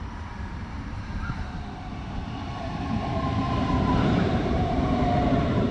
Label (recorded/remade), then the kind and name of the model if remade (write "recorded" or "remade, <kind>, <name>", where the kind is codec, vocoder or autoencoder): remade, vocoder, BigVGAN v2